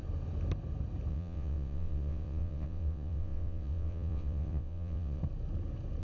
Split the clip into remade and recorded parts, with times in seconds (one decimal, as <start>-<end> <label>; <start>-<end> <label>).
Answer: 0.0-1.1 recorded; 1.1-5.2 remade; 5.2-6.0 recorded